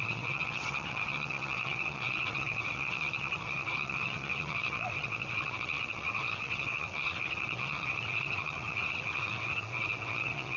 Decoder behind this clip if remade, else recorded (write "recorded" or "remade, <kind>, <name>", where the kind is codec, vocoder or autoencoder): remade, vocoder, WaveNeXt